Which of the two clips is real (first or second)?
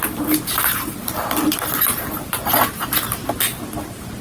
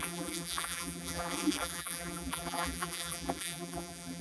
first